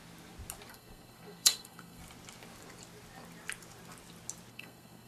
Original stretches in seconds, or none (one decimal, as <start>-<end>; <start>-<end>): 0.0-0.7; 2.0-4.5